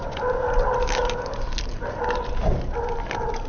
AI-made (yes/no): no